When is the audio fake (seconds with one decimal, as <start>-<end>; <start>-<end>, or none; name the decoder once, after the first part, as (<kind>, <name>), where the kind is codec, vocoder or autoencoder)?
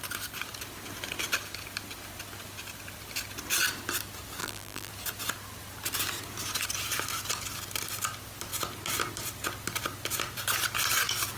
4.4-4.9 (vocoder, BigVGAN v2)